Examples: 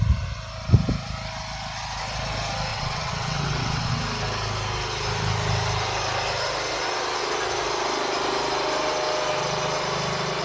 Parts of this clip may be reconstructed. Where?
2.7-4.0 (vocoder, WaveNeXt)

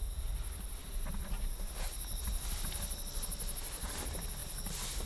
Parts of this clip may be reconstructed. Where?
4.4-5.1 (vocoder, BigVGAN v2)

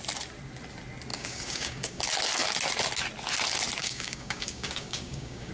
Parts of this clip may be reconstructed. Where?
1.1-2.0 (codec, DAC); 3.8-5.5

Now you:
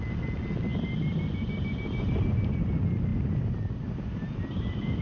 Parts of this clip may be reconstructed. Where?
none

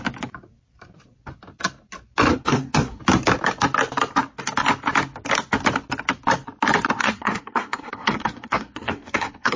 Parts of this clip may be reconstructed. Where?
2.3-3.0 (codec, SNAC); 7.0-9.6

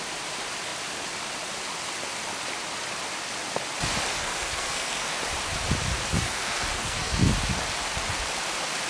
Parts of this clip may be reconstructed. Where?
4.1-5.2 (codec, SNAC); 6.1-7.3

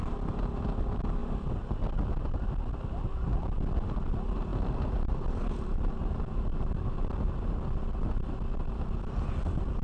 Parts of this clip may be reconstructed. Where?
none